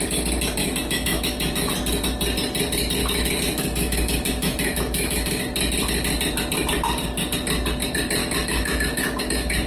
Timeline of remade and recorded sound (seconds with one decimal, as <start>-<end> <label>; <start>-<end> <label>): 0.0-0.6 recorded; 0.6-1.7 remade; 1.7-3.0 recorded; 3.0-5.4 remade; 5.4-8.2 recorded; 8.2-9.7 remade